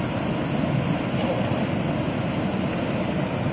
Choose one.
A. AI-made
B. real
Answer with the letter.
B